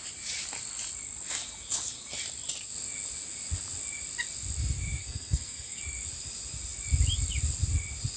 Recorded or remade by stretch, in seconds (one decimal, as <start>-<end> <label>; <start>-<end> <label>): 0.0-5.0 recorded; 5.0-5.8 remade; 5.8-8.2 recorded